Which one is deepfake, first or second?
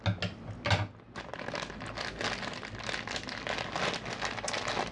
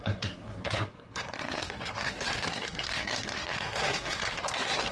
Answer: second